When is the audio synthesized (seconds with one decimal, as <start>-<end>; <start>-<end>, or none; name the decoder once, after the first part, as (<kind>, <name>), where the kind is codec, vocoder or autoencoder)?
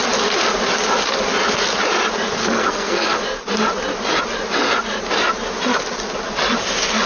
2.4-3.2 (codec, SNAC)